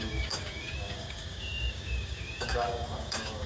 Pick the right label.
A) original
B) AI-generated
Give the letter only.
B